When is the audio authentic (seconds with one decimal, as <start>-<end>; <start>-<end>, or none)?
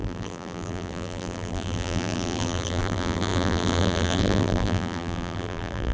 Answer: none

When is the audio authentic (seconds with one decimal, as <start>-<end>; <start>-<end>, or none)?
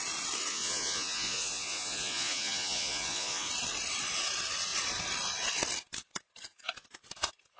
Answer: 0.0-0.5; 3.5-7.6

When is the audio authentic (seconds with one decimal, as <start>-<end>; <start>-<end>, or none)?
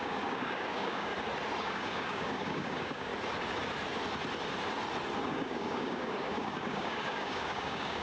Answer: 1.1-1.6; 3.1-5.3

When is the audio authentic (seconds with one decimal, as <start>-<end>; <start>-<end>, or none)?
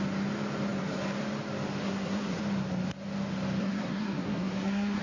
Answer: 0.0-1.8; 2.4-3.6